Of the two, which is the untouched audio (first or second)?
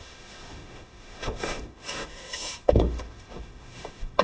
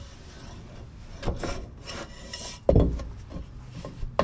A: second